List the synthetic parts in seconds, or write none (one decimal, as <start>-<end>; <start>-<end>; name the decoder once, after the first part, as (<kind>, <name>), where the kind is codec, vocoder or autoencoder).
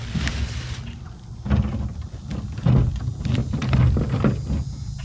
none